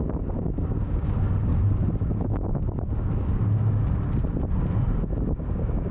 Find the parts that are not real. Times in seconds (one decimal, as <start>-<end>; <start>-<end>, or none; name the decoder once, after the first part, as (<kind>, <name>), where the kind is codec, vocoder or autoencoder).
0.0-1.5 (codec, DAC); 2.2-3.8; 5.4-5.9